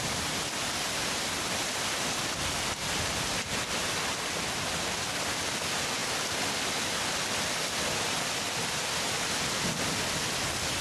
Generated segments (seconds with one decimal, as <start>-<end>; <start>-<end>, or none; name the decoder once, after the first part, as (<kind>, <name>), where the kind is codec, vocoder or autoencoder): none